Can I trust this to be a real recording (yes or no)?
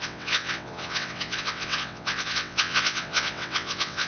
no